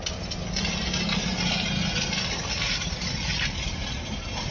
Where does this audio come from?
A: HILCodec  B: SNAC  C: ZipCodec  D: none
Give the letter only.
D